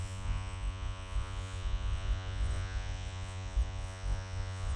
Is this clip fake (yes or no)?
yes